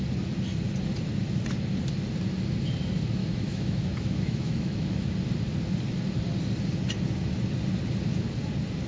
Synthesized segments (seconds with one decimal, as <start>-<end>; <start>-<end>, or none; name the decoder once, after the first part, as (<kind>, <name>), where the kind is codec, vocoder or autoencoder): 3.2-5.1 (autoencoder, DAC-VAE)